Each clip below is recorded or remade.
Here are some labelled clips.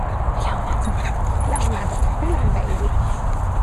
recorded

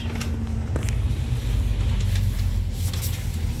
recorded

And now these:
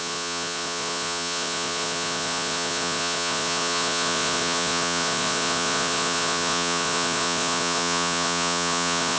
remade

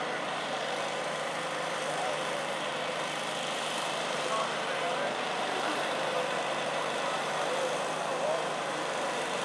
remade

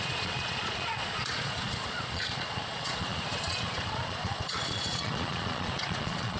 remade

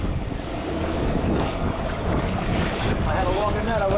remade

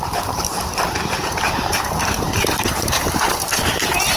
remade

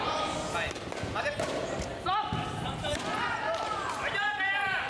recorded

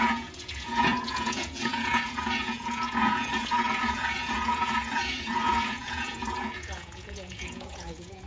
remade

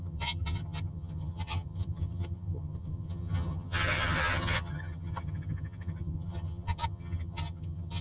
remade